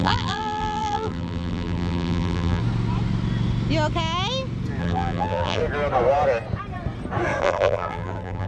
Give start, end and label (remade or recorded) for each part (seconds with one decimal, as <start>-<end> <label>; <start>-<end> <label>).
0.0-2.6 remade; 2.6-4.8 recorded; 4.8-5.6 remade; 5.6-7.4 recorded; 7.4-8.5 remade